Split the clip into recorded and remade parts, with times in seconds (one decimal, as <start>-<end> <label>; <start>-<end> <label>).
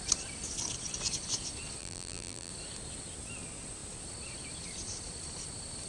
0.0-1.8 recorded; 1.8-2.5 remade; 2.5-5.9 recorded